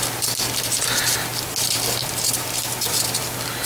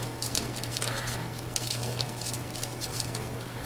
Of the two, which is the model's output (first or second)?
second